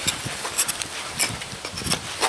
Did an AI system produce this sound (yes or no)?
no